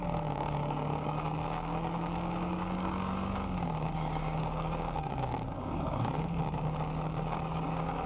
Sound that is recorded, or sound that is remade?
remade